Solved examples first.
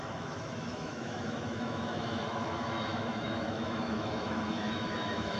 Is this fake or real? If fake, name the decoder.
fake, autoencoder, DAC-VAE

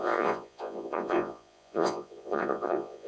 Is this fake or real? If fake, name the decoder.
fake, vocoder, Vocos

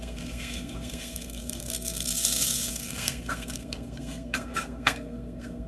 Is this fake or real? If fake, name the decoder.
fake, codec, SNAC